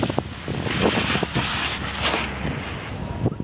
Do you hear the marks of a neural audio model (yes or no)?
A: no